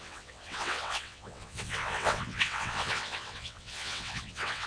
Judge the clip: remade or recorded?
remade